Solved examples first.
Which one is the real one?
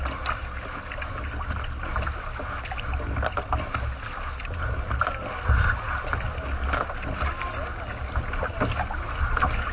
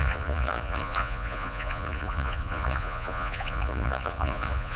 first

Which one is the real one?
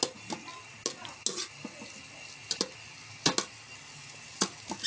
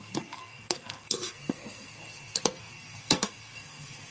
first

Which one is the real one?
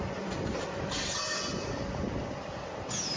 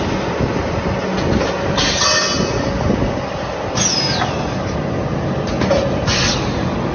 second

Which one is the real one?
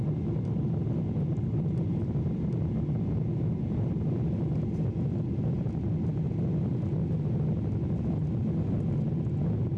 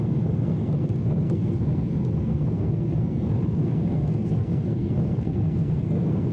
first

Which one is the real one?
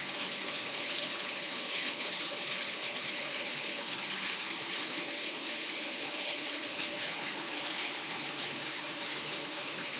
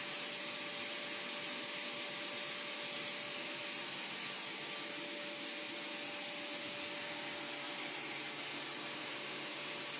second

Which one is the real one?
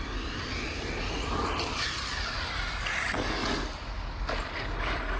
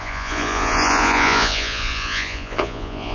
first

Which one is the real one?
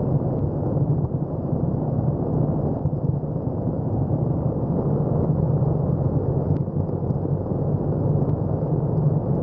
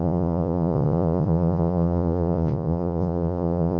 first